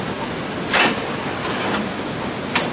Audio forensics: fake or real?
real